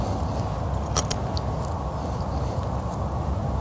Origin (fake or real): real